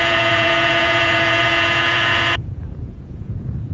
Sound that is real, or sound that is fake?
fake